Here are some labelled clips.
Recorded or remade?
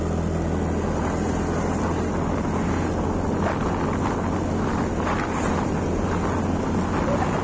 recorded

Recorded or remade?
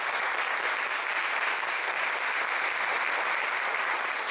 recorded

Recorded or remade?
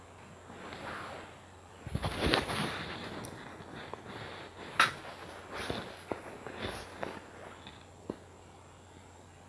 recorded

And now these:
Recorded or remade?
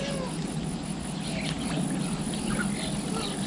recorded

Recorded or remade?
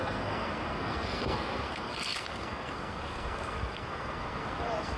remade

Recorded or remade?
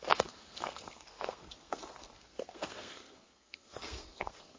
remade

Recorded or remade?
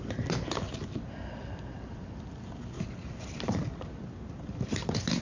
recorded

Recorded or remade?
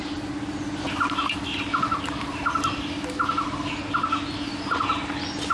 recorded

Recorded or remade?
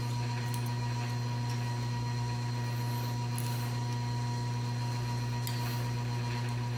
recorded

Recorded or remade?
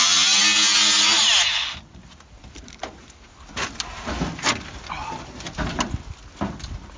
recorded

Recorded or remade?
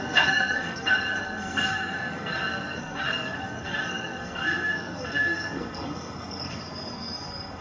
remade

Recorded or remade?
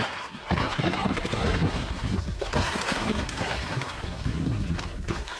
remade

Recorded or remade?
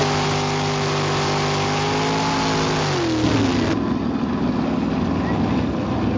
recorded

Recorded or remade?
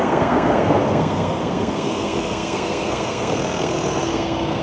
remade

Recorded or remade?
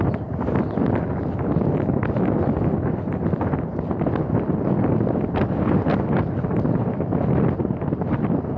recorded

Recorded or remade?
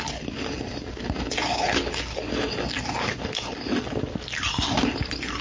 recorded